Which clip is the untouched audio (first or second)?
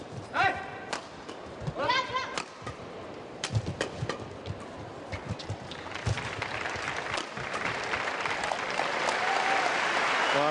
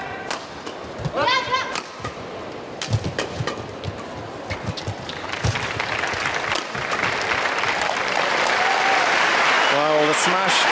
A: second